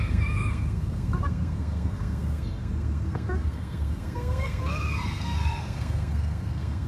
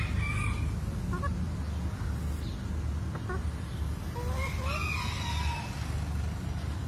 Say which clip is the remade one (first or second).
first